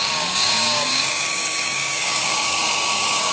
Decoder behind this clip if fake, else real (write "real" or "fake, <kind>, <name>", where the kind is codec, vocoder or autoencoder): fake, codec, DAC